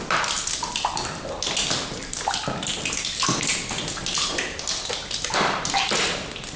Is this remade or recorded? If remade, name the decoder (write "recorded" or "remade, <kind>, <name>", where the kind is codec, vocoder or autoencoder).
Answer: recorded